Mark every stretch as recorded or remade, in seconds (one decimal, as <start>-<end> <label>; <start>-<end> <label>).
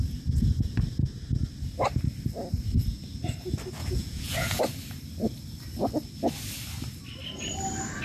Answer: 0.0-3.8 recorded; 3.8-4.6 remade; 4.6-8.0 recorded